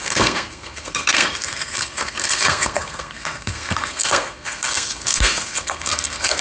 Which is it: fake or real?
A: fake